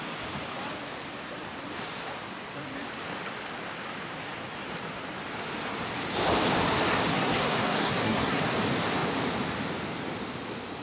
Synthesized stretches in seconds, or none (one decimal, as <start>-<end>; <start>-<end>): 7.1-8.4